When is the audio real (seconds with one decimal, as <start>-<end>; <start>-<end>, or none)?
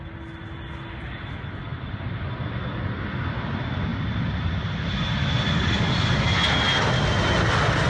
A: 0.0-1.7; 2.6-3.9; 4.9-7.9